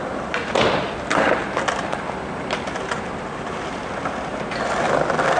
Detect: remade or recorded recorded